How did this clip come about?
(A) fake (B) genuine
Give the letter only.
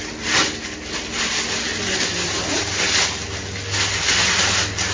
B